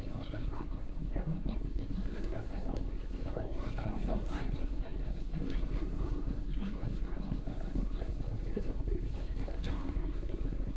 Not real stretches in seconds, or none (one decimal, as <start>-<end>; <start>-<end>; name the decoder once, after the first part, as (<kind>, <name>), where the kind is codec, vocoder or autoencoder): 0.0-10.8 (codec, SNAC)